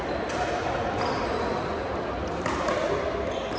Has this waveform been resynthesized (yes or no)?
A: no